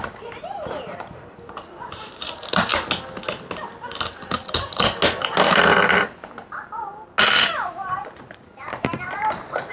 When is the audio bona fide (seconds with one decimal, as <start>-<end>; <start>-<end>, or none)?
2.7-7.2